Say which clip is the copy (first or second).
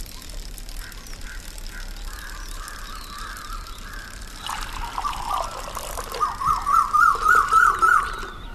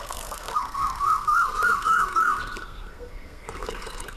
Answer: second